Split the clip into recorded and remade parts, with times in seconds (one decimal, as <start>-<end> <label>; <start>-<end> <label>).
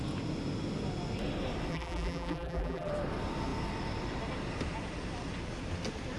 0.0-1.7 recorded; 1.7-2.9 remade; 2.9-6.2 recorded